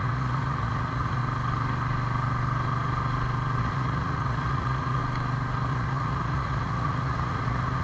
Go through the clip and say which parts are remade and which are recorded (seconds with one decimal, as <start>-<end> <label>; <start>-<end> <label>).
0.0-1.2 remade; 1.2-3.6 recorded; 3.6-5.0 remade; 5.0-5.7 recorded; 5.7-7.8 remade